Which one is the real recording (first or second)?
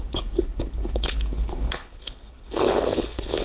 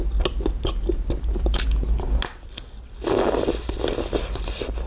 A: second